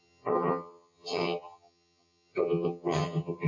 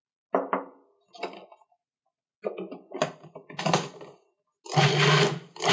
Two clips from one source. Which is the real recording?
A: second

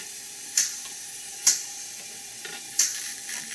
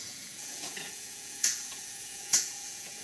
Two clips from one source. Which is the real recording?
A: first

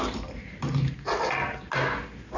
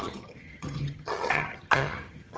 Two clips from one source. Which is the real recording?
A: first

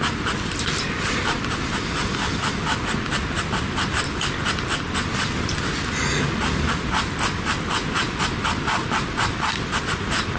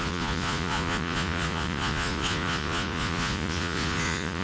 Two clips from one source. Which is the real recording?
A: first